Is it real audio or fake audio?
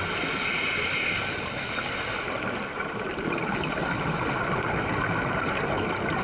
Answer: real